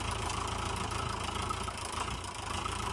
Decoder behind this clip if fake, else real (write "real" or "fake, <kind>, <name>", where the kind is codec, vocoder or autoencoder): real